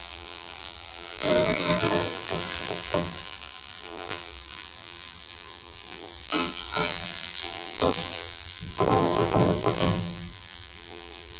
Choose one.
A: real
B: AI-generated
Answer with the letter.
B